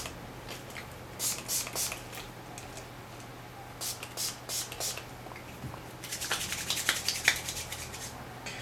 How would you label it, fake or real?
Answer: real